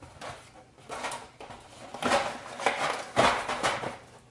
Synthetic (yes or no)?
no